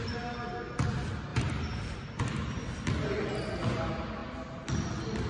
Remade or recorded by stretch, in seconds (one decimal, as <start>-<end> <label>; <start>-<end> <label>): 0.0-1.3 recorded; 1.3-2.2 remade; 2.2-5.3 recorded